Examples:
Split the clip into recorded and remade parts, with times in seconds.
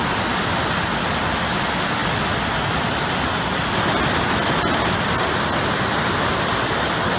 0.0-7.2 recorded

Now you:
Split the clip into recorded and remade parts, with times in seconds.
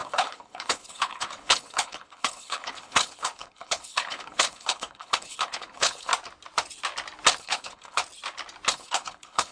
0.0-6.1 remade; 6.1-7.4 recorded; 7.4-8.0 remade; 8.0-8.7 recorded; 8.7-9.5 remade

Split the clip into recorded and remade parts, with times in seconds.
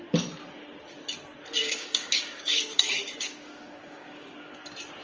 0.0-1.6 recorded; 1.6-4.6 remade; 4.6-5.0 recorded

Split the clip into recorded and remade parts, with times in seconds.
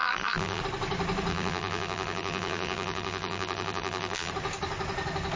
0.0-0.6 remade; 0.6-1.3 recorded; 1.3-4.3 remade; 4.3-5.4 recorded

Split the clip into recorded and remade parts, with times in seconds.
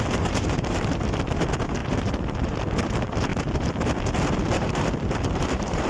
0.0-1.8 remade; 1.8-2.4 recorded; 2.4-3.3 remade; 3.3-4.4 recorded; 4.4-5.9 remade